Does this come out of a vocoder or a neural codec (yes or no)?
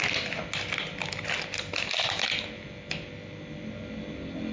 no